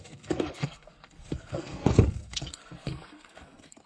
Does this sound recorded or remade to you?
remade